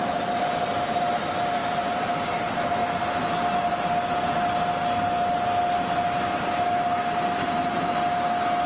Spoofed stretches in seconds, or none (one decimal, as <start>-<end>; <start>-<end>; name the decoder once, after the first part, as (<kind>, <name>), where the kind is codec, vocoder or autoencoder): 1.6-2.4 (vocoder, BigVGAN v2)